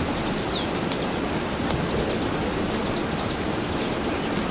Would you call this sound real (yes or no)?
yes